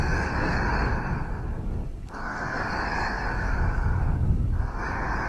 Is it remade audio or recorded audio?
remade